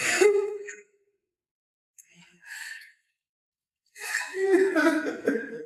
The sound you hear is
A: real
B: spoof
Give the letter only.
B